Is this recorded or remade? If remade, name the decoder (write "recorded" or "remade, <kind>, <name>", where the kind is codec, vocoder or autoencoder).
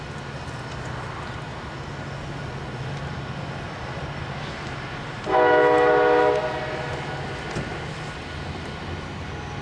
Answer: recorded